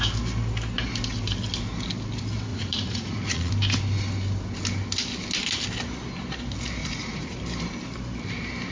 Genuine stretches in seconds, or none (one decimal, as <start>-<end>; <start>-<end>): 0.0-2.5; 3.5-6.8; 7.4-8.7